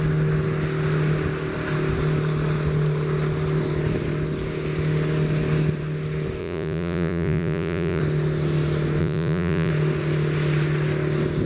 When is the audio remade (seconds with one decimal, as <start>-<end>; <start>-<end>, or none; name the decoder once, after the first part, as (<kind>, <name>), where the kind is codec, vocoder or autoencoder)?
6.4-8.0 (vocoder, Vocos); 9.0-9.7